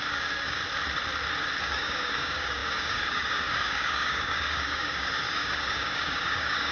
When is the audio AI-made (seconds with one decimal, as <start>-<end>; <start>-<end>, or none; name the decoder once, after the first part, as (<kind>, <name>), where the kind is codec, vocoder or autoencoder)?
0.0-0.6 (codec, DAC); 1.6-6.7